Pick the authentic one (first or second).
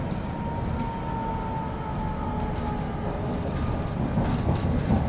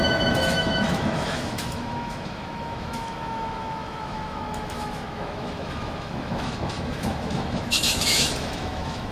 first